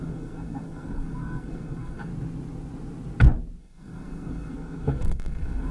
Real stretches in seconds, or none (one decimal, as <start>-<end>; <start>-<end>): 2.1-3.6